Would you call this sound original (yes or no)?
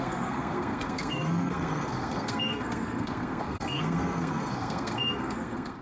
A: no